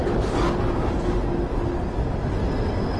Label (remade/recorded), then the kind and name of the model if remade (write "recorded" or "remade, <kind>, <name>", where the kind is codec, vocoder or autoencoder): recorded